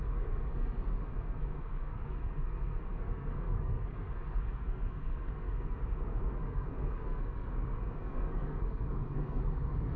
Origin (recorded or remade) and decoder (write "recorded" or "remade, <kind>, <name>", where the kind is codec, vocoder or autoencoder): remade, codec, SNAC